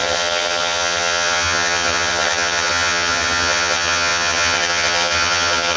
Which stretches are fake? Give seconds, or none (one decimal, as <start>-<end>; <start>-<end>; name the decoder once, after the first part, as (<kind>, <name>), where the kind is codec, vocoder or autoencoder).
0.0-5.8 (vocoder, HiFi-GAN)